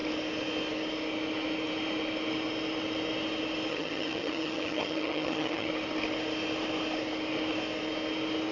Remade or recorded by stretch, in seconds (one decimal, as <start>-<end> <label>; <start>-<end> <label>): 0.0-3.7 recorded; 3.7-5.7 remade; 5.7-8.5 recorded